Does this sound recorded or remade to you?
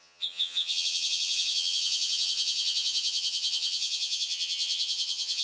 remade